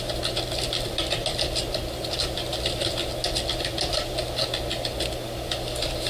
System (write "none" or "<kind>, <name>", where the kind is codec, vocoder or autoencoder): none